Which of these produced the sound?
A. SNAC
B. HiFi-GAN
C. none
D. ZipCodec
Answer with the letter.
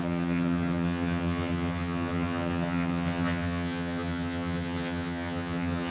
B